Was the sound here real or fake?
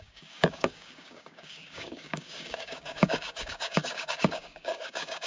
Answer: fake